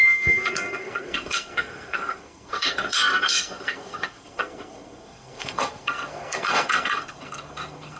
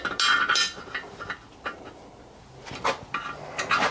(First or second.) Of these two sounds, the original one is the second